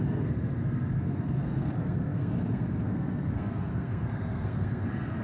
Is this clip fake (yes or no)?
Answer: yes